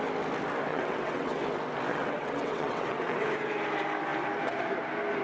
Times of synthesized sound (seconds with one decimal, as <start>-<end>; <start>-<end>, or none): 0.7-1.4; 1.9-3.2